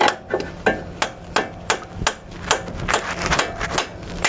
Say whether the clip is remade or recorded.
recorded